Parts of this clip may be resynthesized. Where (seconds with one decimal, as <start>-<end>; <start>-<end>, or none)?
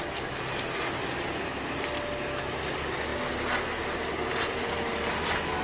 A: none